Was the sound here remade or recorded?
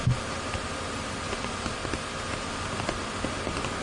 recorded